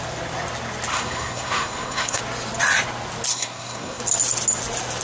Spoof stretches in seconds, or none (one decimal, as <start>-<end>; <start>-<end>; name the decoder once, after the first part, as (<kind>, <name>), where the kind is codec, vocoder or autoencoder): 0.9-2.2 (codec, SNAC); 3.3-4.0